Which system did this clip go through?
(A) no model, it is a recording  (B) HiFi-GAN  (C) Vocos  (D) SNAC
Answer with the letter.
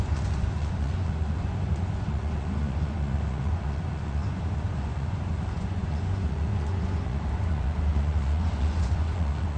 C